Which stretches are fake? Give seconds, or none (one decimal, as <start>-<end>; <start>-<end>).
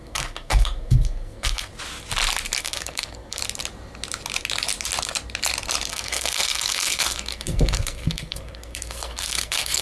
0.0-1.7; 2.6-3.4; 5.9-9.8